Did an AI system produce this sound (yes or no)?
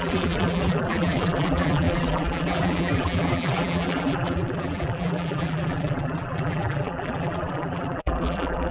yes